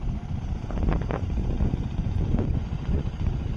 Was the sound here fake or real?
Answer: fake